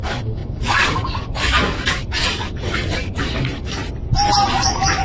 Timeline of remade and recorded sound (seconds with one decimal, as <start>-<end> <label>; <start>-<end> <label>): 0.0-3.8 remade; 3.8-4.5 recorded; 4.5-5.0 remade